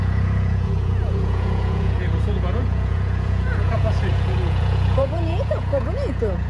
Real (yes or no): no